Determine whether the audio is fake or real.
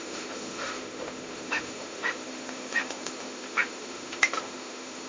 fake